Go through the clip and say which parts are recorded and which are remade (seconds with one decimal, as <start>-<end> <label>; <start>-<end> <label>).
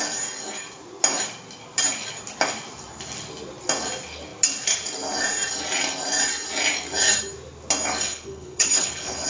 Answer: 0.0-8.1 recorded; 8.1-9.3 remade